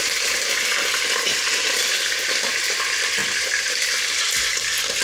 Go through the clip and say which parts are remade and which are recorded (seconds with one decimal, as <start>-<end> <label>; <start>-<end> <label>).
0.0-1.3 recorded; 1.3-2.7 remade; 2.7-3.2 recorded; 3.2-4.5 remade; 4.5-5.0 recorded